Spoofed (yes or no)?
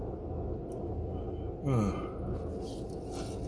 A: no